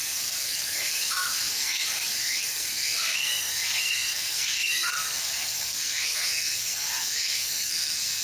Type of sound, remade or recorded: remade